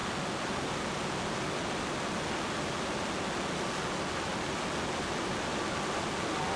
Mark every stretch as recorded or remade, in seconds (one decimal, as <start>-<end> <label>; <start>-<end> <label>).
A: 0.0-6.6 recorded